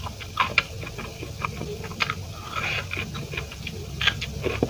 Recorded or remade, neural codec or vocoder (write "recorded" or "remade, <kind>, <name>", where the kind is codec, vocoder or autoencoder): recorded